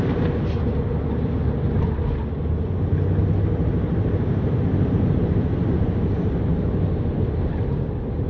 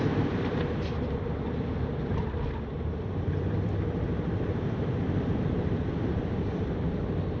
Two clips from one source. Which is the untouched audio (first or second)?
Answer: first